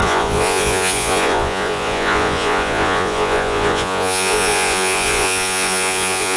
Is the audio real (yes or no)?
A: no